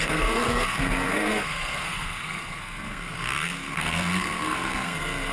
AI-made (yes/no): yes